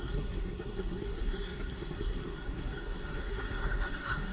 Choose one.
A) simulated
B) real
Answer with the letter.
A